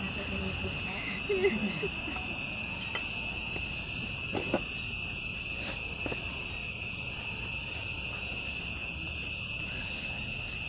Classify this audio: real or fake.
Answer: real